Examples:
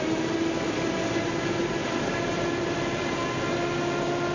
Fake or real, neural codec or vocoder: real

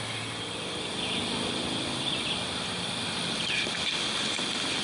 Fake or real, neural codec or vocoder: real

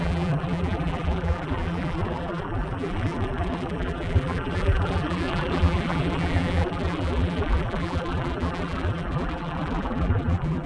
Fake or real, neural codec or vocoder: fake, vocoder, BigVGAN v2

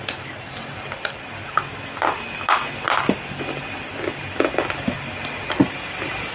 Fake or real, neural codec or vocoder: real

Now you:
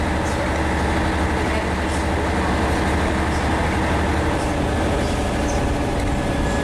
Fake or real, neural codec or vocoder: real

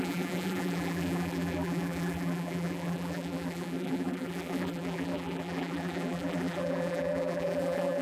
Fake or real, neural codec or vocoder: fake, vocoder, BigVGAN v2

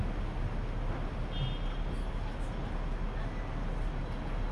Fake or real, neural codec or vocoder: real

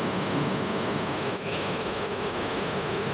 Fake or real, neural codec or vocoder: fake, autoencoder, DAC-VAE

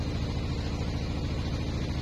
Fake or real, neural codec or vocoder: real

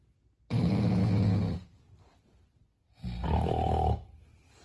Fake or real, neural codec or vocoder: real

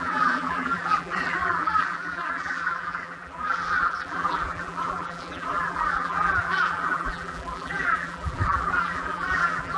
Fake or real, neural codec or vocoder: fake, vocoder, BigVGAN v2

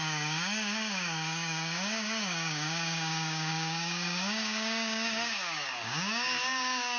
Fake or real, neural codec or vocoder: fake, codec, DAC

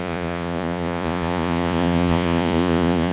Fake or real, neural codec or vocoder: fake, vocoder, Vocos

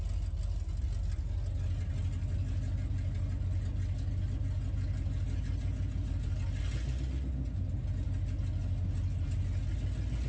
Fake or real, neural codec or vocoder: real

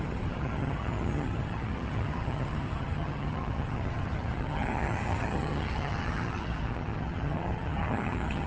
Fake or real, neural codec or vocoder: fake, vocoder, HiFi-GAN